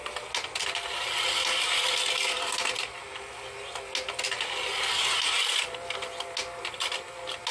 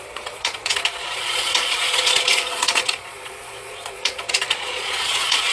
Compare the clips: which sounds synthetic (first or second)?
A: second